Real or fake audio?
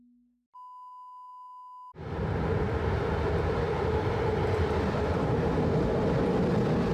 real